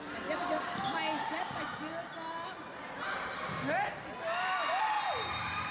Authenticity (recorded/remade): recorded